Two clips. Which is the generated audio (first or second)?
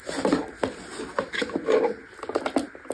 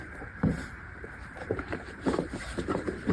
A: second